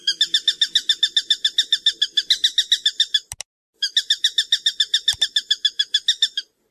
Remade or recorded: recorded